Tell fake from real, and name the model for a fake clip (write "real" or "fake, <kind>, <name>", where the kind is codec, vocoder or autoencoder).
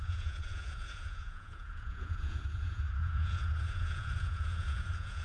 fake, vocoder, Vocos